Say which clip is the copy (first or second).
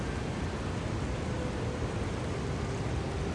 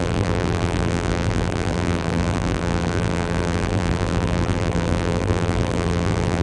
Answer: second